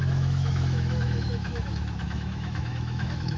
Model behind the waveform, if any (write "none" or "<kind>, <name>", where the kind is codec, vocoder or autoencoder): autoencoder, DAC-VAE